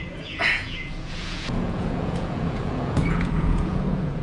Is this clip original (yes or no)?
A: no